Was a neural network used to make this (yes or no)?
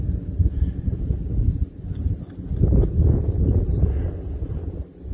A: no